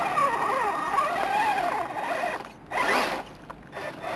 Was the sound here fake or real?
real